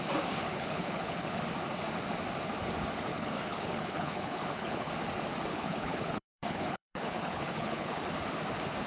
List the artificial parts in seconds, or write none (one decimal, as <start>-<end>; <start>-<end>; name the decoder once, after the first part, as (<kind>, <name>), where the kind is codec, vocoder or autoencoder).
0.5-1.4 (codec, HILCodec); 3.1-4.9; 5.5-8.0